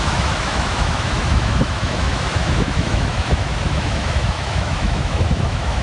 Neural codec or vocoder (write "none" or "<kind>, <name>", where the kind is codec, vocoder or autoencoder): autoencoder, DAC-VAE